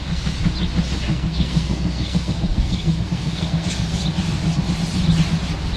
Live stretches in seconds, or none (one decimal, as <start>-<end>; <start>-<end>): 0.4-1.1; 4.0-5.8